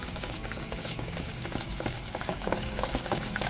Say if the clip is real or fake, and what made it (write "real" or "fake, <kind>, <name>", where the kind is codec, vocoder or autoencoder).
fake, codec, DAC